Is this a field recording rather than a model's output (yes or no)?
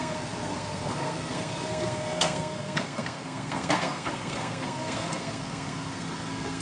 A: no